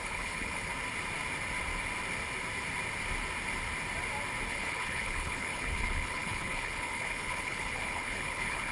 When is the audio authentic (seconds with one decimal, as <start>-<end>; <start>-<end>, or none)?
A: 0.7-4.5